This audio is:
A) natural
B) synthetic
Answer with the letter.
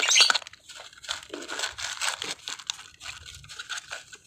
A